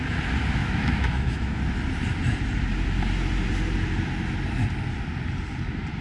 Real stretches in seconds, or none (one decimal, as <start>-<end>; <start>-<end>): 0.0-0.6; 1.6-6.0